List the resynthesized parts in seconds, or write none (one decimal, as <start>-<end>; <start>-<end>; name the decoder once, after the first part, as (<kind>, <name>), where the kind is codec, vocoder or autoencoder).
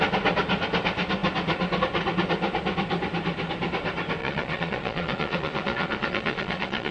4.2-6.9 (vocoder, Vocos)